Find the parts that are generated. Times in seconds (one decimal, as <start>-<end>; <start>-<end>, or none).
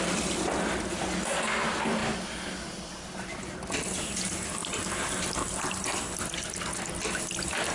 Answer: none